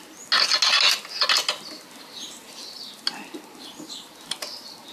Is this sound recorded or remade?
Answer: recorded